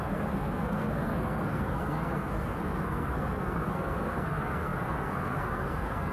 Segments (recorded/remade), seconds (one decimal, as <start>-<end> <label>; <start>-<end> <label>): 0.0-6.1 remade

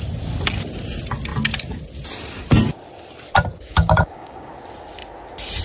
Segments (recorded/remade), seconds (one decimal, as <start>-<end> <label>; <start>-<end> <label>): 0.0-3.7 recorded; 3.7-4.5 remade; 4.5-5.6 recorded

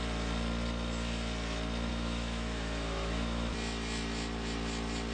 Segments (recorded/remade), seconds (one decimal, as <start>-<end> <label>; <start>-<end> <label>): 0.0-1.9 recorded; 1.9-3.5 remade; 3.5-5.1 recorded